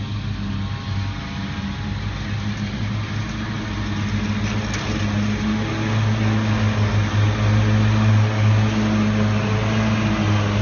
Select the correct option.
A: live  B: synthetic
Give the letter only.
A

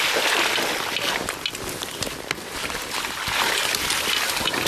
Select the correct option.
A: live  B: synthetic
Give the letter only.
A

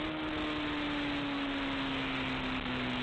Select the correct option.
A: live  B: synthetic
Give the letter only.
A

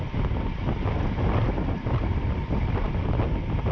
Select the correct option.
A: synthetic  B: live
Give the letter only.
B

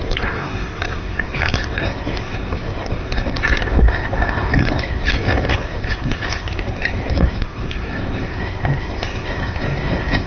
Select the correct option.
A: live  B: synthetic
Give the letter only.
B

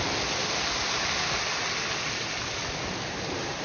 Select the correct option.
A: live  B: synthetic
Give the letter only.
A